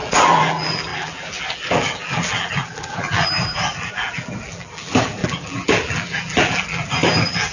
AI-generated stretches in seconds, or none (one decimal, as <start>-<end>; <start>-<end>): 0.0-7.5